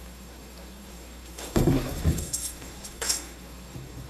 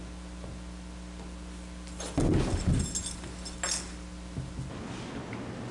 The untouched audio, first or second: second